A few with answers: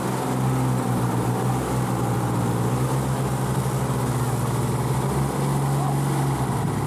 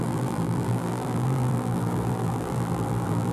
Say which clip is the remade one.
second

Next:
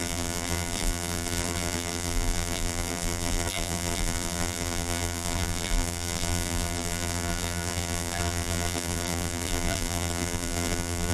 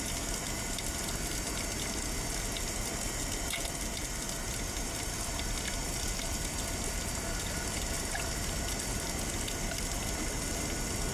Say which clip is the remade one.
first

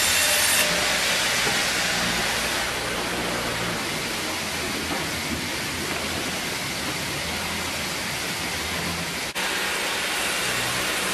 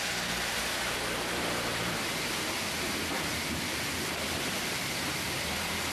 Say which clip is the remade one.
second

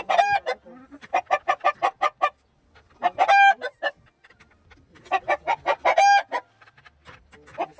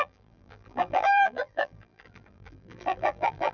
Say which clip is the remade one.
second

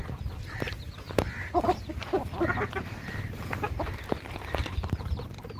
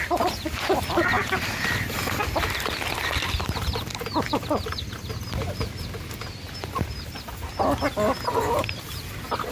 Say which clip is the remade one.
first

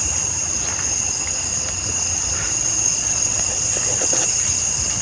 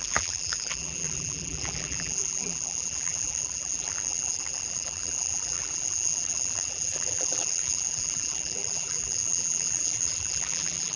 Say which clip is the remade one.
second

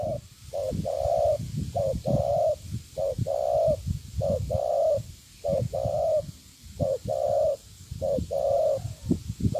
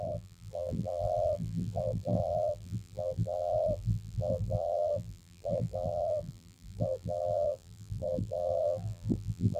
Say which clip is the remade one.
second